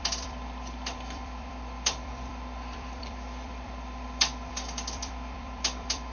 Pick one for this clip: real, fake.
fake